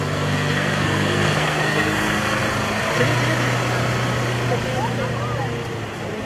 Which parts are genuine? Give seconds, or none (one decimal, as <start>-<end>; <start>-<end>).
2.4-6.3